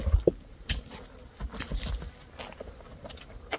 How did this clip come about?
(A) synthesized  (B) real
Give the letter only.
B